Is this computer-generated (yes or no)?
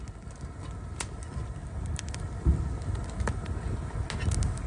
no